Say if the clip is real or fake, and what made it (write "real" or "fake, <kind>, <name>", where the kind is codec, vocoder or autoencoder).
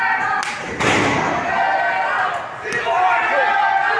real